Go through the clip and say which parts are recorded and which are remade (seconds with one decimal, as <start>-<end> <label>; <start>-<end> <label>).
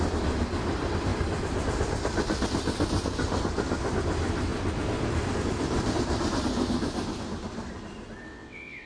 0.0-8.3 recorded; 8.3-8.9 remade